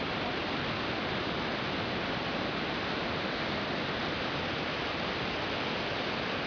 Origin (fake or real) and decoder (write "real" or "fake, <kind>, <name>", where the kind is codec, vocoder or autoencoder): real